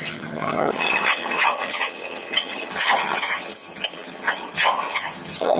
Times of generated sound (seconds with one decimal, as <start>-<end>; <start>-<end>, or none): 0.0-5.6